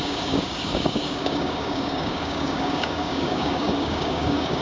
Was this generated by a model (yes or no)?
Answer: yes